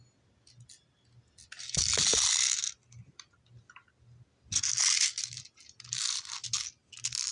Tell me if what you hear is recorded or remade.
recorded